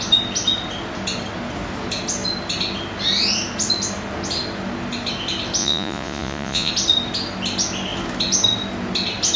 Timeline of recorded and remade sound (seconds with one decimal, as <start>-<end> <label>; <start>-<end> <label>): 0.0-5.6 recorded; 5.6-6.7 remade; 6.7-9.4 recorded